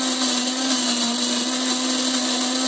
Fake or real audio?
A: real